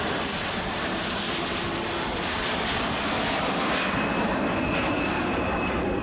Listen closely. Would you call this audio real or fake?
fake